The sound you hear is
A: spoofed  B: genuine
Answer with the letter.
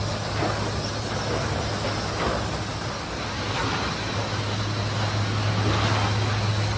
B